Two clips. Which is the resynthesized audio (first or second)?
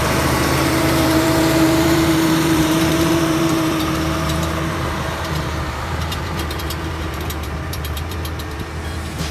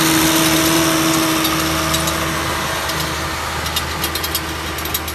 first